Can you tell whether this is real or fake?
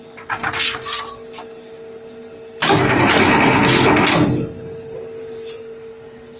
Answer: real